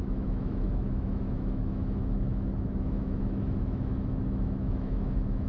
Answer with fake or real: fake